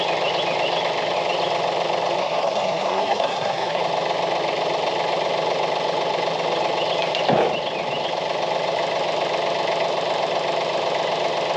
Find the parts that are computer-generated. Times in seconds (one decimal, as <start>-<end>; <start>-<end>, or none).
2.2-3.8